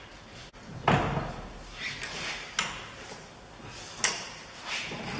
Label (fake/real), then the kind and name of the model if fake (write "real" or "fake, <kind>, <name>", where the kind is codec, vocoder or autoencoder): real